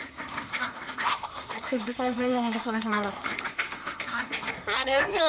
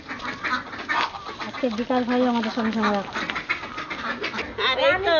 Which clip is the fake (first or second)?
first